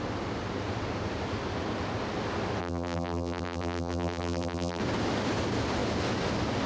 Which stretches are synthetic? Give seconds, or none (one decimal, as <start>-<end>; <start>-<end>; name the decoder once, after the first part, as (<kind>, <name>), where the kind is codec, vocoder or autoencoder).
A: 2.6-4.8 (vocoder, BigVGAN v2)